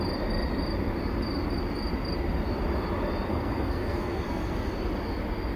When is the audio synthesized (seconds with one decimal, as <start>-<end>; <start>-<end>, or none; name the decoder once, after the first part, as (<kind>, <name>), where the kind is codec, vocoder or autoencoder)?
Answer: 3.3-4.7 (codec, SNAC)